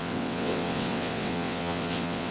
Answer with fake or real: fake